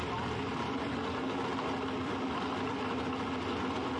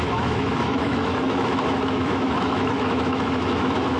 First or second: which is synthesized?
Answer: second